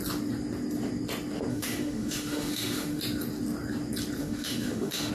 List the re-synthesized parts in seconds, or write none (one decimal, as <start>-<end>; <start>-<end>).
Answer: 1.5-3.0; 4.2-5.1